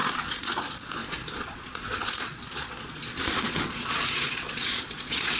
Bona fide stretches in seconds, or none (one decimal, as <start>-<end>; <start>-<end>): none